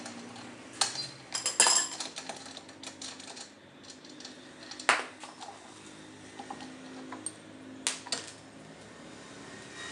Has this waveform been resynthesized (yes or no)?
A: no